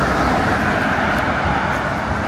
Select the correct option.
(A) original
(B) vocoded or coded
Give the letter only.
A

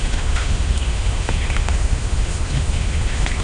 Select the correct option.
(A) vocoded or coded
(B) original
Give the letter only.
A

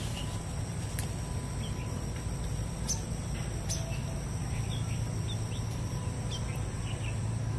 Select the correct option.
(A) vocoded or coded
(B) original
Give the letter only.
B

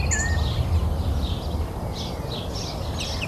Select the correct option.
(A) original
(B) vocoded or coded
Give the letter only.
A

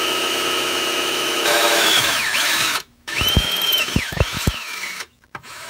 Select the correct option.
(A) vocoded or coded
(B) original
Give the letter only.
A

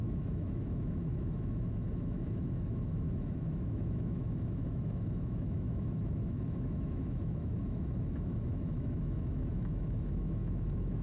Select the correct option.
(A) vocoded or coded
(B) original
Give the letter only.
A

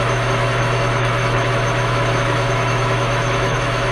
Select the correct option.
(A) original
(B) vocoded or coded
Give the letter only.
B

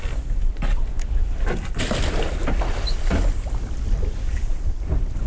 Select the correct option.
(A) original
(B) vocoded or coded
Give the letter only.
A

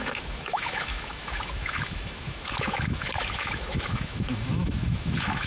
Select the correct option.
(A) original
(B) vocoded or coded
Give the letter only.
B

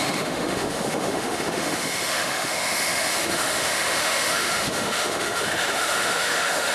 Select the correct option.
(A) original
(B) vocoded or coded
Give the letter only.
B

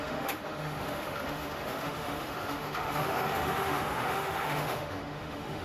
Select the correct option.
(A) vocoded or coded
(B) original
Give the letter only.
A